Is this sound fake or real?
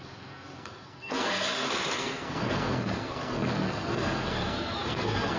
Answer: fake